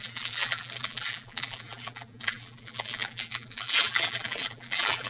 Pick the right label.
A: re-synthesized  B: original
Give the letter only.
A